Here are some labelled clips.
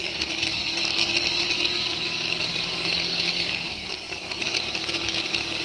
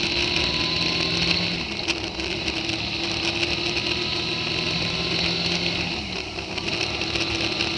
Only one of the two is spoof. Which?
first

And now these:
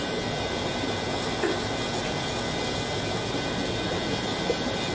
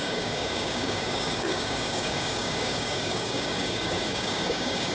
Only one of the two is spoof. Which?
second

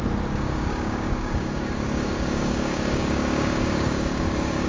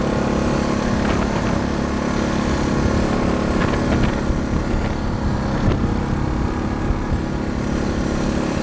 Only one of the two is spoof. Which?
first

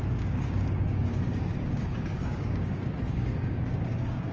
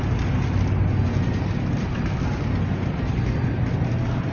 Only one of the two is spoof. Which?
first